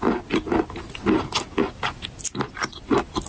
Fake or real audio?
real